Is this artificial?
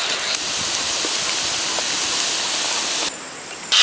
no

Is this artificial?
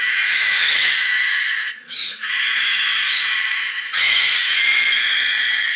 yes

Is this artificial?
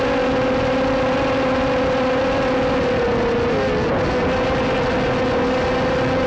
no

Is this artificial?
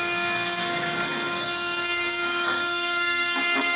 yes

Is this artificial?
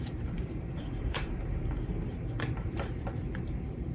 yes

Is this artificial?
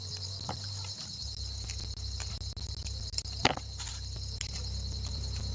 no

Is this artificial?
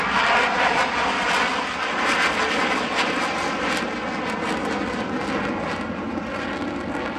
no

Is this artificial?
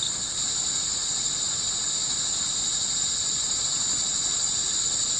no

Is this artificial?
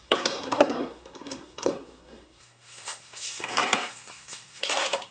yes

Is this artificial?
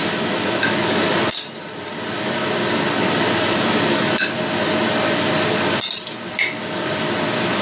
no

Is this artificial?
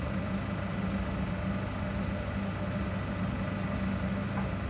no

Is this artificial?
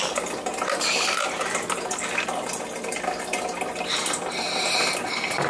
no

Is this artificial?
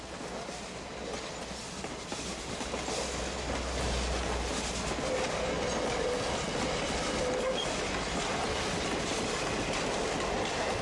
no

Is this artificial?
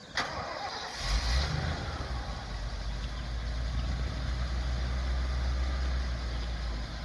no